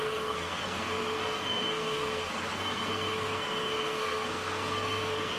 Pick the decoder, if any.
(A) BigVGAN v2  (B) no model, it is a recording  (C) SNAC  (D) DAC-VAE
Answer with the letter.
C